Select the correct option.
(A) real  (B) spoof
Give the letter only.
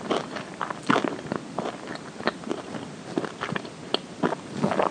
A